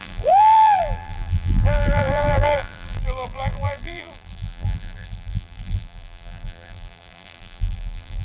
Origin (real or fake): fake